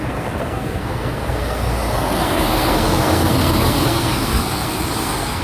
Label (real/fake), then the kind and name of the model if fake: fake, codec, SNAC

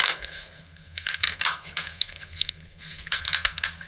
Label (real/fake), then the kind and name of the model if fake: fake, codec, SNAC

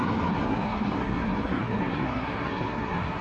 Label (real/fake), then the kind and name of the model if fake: fake, codec, SNAC